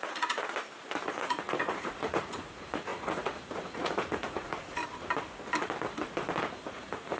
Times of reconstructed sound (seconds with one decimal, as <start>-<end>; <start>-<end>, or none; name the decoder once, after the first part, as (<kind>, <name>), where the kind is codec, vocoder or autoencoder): 0.0-0.4 (vocoder, Vocos); 1.1-4.8; 6.7-7.2